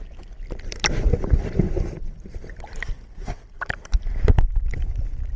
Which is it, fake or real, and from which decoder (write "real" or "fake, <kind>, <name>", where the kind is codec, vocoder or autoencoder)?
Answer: fake, vocoder, BigVGAN v2